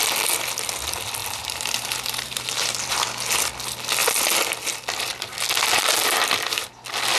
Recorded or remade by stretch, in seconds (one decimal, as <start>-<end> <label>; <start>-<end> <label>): 0.0-1.2 recorded; 1.2-2.5 remade; 2.5-7.2 recorded